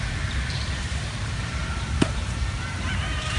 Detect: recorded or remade remade